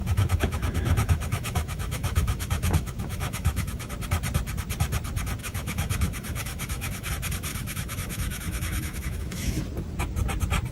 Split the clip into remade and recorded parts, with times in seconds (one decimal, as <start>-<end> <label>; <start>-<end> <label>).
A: 0.0-3.9 remade; 3.9-5.4 recorded; 5.4-7.1 remade; 7.1-7.5 recorded; 7.5-9.6 remade; 9.6-10.7 recorded